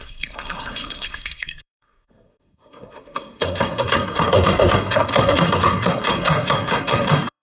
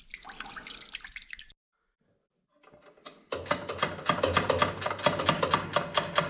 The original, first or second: second